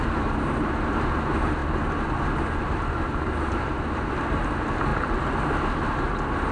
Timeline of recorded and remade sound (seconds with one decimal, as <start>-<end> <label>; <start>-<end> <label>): 0.0-4.9 remade; 4.9-6.5 recorded